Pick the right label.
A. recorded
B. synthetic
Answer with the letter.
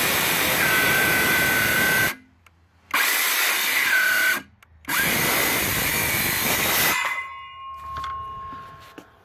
A